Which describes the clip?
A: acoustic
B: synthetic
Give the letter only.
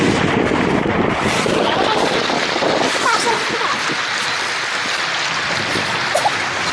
A